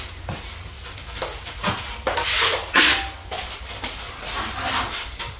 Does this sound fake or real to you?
real